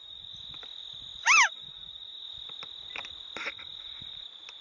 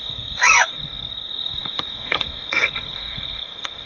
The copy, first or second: second